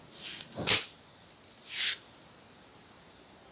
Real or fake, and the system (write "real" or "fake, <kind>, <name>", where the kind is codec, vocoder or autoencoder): real